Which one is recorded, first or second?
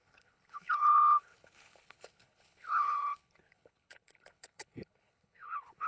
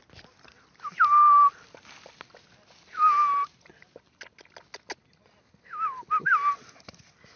second